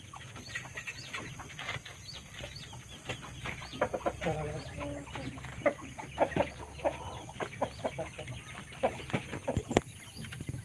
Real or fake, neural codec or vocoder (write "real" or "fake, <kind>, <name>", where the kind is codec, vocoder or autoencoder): real